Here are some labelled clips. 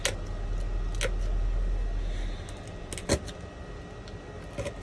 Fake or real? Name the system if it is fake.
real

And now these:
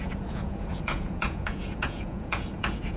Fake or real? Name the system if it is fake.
fake, vocoder, Vocos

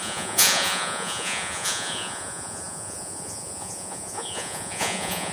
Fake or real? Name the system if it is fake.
fake, vocoder, Vocos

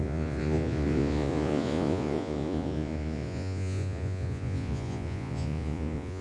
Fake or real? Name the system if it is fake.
fake, vocoder, Vocos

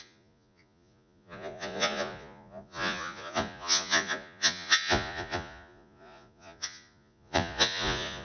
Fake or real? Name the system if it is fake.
fake, vocoder, Vocos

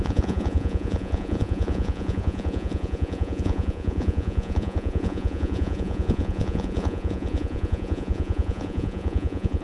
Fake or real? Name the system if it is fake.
fake, vocoder, Vocos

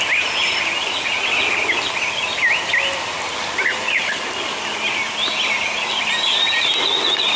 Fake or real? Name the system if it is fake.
real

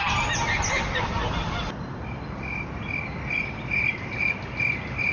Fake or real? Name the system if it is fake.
real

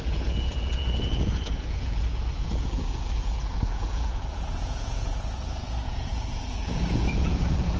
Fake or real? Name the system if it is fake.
fake, vocoder, Vocos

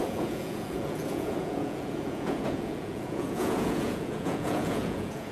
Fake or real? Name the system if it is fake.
fake, vocoder, Vocos